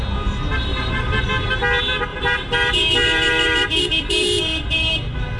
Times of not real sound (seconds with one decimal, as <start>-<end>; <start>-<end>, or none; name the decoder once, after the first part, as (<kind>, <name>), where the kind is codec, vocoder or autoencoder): 0.7-1.2 (vocoder, BigVGAN v2); 2.1-4.9